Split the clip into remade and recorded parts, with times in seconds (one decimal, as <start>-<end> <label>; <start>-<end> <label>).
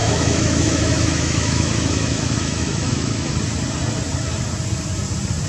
0.0-3.3 remade; 3.3-5.5 recorded